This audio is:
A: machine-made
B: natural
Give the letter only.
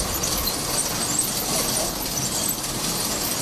B